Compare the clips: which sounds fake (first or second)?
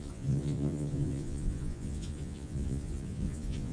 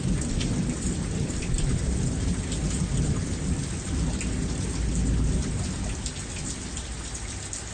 first